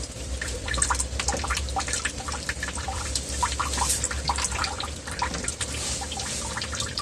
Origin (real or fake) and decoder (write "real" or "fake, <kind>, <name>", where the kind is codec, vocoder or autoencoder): fake, vocoder, BigVGAN v2